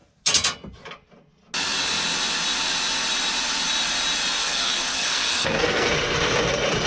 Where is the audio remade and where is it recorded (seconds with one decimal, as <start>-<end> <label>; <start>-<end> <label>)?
0.0-4.4 recorded; 4.4-5.9 remade; 5.9-6.9 recorded